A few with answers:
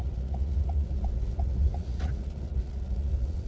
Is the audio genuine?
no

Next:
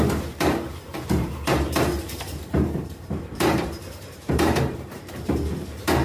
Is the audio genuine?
no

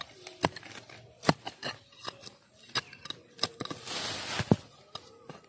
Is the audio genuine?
yes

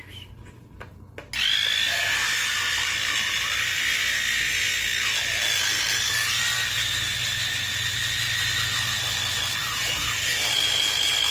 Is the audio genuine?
yes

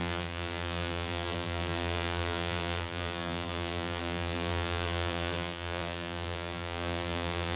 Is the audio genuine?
no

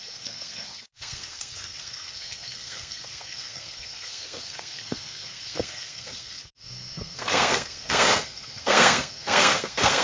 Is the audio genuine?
no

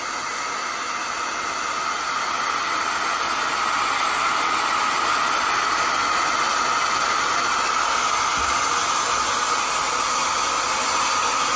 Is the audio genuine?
yes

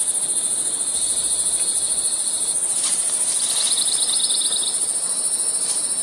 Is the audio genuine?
yes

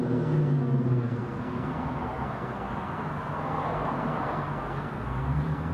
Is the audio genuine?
no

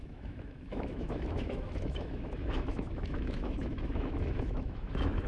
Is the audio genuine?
no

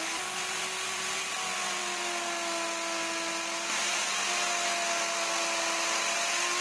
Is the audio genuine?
yes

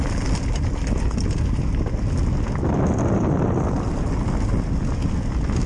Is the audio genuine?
yes